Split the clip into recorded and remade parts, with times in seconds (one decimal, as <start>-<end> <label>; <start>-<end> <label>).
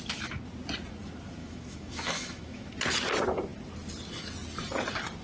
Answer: 0.0-1.4 recorded; 1.4-2.7 remade; 2.7-5.2 recorded